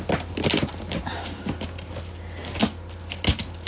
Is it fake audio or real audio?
real